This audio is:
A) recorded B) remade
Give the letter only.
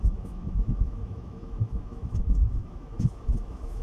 B